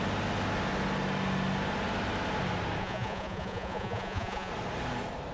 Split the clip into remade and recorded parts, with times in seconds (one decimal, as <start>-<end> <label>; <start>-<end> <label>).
0.0-2.8 recorded; 2.8-4.5 remade; 4.5-5.3 recorded